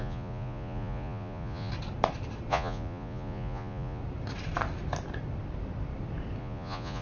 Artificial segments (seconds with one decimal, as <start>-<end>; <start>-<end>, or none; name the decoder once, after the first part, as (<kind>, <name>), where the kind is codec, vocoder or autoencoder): 0.0-1.7 (vocoder, Vocos); 2.5-4.0; 6.4-7.0